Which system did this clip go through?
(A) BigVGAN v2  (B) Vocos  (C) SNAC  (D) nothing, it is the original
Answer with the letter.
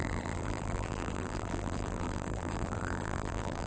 A